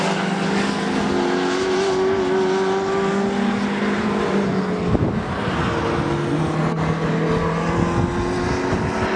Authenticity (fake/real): real